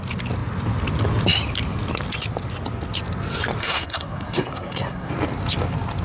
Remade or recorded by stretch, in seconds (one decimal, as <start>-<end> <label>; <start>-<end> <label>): 0.0-3.6 recorded; 3.6-5.1 remade; 5.1-6.0 recorded